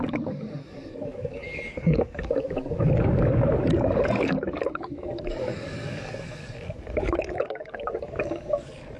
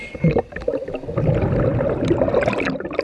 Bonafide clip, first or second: second